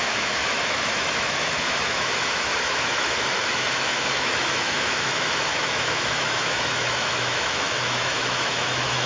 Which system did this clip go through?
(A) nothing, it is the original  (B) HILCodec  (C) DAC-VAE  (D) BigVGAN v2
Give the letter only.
C